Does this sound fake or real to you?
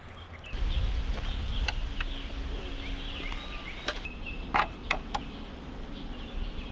real